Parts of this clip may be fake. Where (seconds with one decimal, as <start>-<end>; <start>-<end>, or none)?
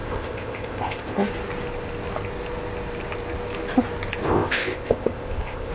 0.0-1.3; 4.3-5.7